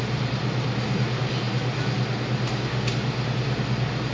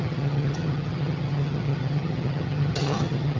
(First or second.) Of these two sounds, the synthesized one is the second